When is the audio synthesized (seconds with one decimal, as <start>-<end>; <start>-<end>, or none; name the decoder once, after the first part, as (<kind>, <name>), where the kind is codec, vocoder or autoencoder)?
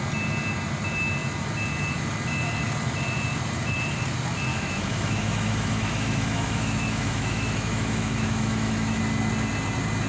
4.5-9.0 (autoencoder, DAC-VAE)